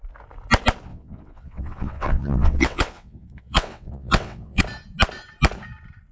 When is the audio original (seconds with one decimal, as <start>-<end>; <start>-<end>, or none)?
0.0-0.9; 4.6-6.1